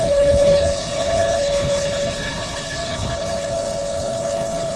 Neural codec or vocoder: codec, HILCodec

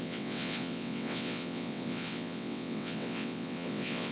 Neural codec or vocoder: vocoder, WaveNeXt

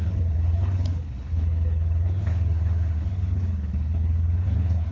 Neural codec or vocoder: codec, HILCodec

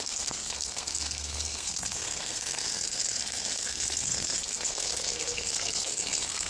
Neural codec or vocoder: codec, SNAC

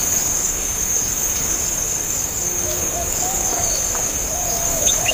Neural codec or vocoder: codec, DAC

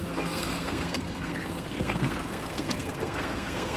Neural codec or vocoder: codec, SNAC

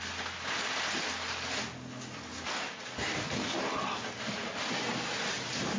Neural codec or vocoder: none